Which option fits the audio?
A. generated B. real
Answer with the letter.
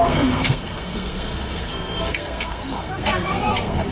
A